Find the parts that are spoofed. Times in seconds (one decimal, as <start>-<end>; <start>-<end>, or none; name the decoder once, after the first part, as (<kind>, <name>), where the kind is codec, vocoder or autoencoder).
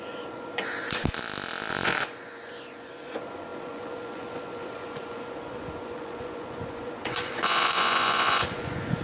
0.0-1.1 (vocoder, Vocos); 1.7-9.0